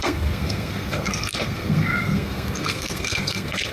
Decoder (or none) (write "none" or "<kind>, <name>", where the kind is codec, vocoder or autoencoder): codec, SNAC